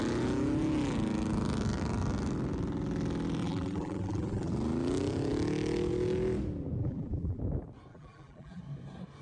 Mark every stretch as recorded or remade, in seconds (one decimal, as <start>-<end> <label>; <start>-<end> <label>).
0.0-3.4 recorded; 3.4-4.5 remade; 4.5-6.8 recorded; 6.8-7.4 remade; 7.4-7.9 recorded; 7.9-8.6 remade; 8.6-9.2 recorded